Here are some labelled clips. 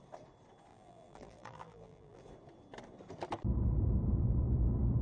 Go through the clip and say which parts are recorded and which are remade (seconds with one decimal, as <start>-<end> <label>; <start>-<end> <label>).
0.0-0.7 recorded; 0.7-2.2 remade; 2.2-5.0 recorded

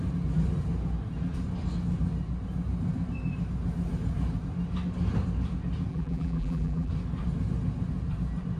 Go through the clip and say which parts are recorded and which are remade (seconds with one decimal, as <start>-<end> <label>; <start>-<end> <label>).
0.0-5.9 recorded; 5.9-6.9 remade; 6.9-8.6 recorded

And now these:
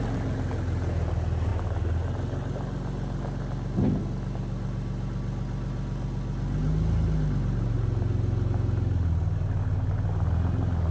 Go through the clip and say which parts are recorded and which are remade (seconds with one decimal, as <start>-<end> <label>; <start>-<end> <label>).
0.0-10.9 recorded

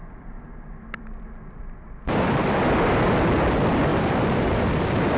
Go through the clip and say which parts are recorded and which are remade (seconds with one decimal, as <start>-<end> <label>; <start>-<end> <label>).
0.0-3.1 remade; 3.1-3.9 recorded; 3.9-4.6 remade; 4.6-5.2 recorded

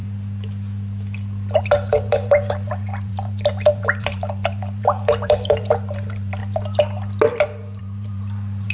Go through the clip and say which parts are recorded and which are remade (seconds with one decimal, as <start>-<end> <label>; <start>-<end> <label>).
0.0-1.6 recorded; 1.6-6.4 remade; 6.4-7.8 recorded; 7.8-8.7 remade

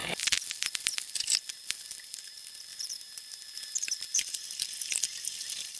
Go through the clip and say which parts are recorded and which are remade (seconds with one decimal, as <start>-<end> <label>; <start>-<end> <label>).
0.0-5.8 recorded

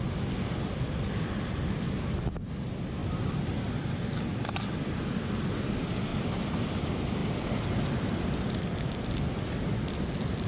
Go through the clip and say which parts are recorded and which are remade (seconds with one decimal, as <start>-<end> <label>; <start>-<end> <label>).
0.0-3.0 recorded; 3.0-4.9 remade; 4.9-6.1 recorded; 6.1-6.7 remade; 6.7-10.5 recorded

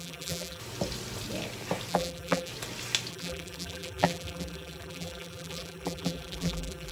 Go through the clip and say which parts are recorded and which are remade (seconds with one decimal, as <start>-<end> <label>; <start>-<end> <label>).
0.0-0.6 remade; 0.6-1.9 recorded; 1.9-2.5 remade; 2.5-3.1 recorded; 3.1-6.9 remade